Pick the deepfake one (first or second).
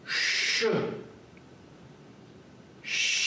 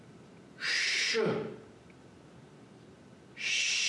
first